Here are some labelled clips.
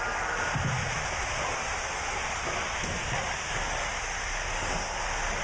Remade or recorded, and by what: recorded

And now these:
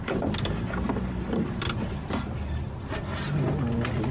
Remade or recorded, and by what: recorded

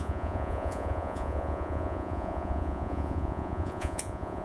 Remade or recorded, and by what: remade, vocoder, Vocos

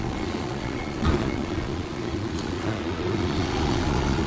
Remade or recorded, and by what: remade, vocoder, Vocos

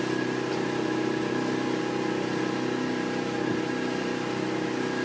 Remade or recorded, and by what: recorded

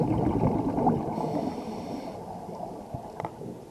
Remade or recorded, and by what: recorded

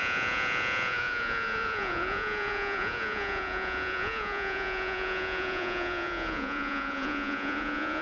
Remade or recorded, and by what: remade, vocoder, Vocos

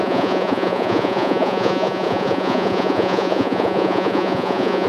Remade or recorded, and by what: remade, vocoder, Vocos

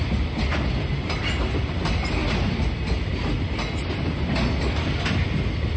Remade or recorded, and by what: recorded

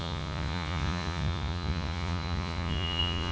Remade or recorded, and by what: remade, vocoder, Vocos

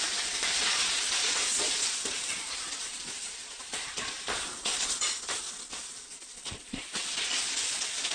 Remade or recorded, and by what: remade, vocoder, Vocos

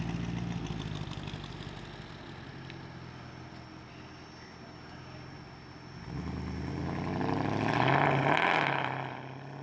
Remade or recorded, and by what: recorded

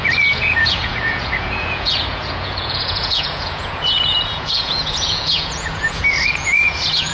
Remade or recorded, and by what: remade, vocoder, Vocos